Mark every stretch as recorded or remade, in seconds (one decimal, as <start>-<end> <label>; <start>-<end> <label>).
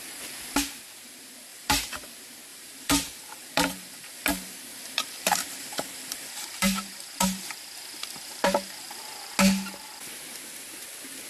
0.0-1.5 recorded; 1.5-2.1 remade; 2.1-2.5 recorded; 2.5-7.4 remade; 7.4-7.9 recorded; 7.9-9.0 remade; 9.0-11.3 recorded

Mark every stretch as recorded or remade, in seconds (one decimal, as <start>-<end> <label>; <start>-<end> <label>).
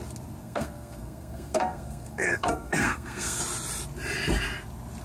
0.0-0.4 recorded; 0.4-3.4 remade; 3.4-5.0 recorded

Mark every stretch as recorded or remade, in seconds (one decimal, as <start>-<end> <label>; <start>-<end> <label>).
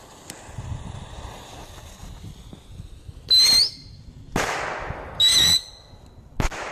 0.0-6.7 recorded